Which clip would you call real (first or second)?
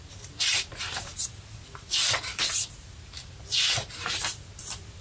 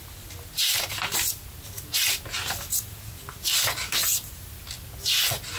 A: second